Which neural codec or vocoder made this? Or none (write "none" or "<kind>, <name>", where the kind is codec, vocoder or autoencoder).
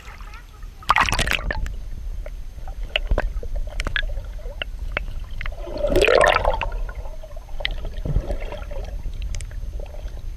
none